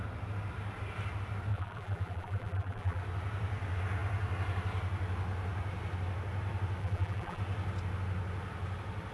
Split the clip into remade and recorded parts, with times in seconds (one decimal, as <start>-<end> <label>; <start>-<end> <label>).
0.0-1.5 recorded; 1.5-3.0 remade; 3.0-6.8 recorded; 6.8-7.4 remade; 7.4-9.1 recorded